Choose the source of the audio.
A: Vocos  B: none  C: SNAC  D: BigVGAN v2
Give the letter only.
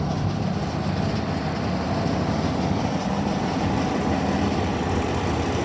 B